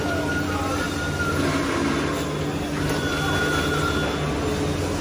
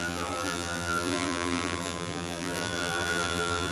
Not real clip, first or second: second